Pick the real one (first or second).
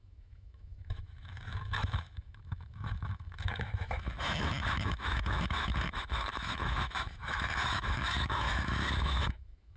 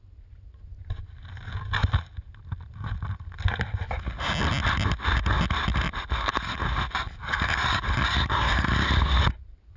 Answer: second